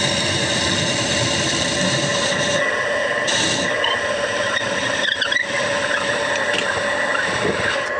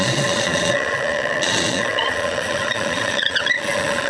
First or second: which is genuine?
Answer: first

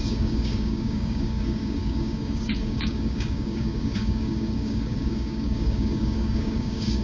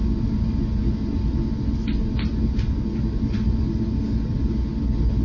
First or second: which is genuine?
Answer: second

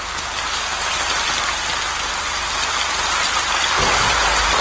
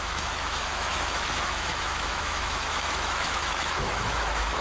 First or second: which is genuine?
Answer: first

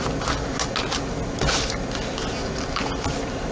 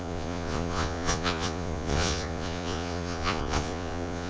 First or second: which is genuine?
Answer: first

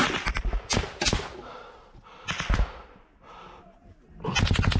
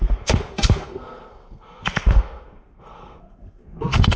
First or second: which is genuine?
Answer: first